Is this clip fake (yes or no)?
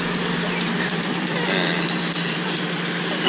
yes